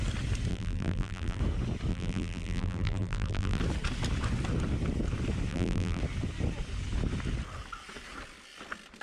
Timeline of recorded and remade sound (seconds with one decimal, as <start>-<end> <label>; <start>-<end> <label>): 0.0-0.5 recorded; 0.5-1.4 remade; 1.4-1.9 recorded; 1.9-3.6 remade; 3.6-5.5 recorded; 5.5-6.0 remade; 6.0-9.0 recorded